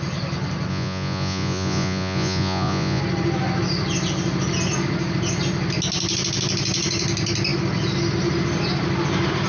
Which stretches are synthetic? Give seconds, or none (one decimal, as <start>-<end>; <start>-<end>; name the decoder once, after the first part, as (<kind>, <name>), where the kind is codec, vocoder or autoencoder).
0.7-3.0 (vocoder, Vocos)